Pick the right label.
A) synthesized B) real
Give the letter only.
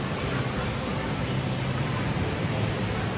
B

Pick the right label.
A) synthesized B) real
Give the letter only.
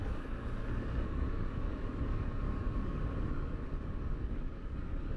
A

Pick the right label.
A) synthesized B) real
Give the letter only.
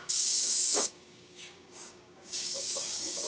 A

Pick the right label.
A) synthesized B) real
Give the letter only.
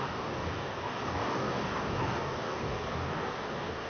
A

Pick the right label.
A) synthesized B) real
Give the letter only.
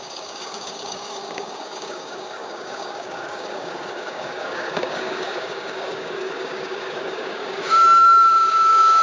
A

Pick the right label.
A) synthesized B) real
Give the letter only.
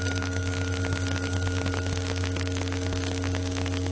A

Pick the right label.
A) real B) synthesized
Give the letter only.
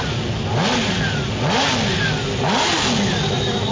A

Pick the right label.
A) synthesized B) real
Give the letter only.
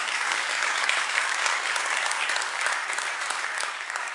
A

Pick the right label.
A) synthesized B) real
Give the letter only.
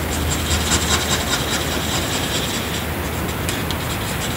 B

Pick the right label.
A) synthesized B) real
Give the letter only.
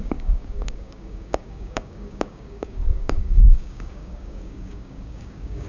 A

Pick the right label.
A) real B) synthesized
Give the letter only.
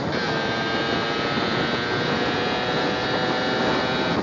A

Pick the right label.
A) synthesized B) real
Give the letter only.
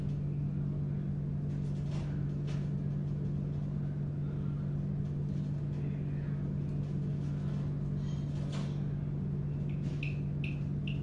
B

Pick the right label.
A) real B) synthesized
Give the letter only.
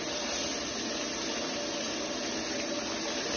A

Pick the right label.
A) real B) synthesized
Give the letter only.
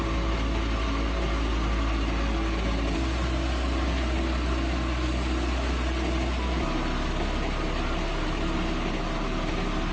A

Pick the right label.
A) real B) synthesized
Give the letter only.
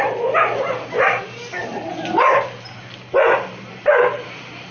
A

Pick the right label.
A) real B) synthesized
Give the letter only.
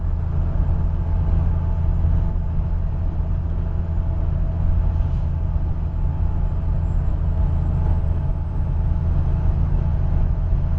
A